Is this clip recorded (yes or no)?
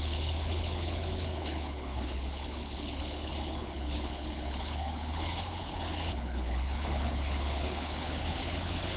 no